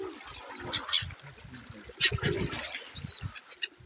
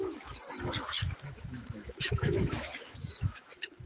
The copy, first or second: second